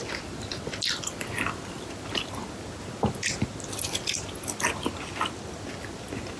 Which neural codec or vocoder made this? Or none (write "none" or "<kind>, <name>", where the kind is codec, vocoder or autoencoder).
none